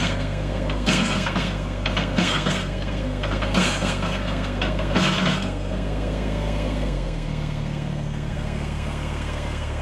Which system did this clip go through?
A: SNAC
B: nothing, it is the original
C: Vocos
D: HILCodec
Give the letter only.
A